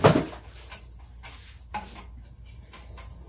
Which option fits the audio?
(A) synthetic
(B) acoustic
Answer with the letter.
B